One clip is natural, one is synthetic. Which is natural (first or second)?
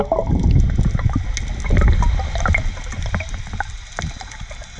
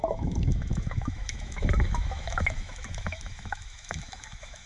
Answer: first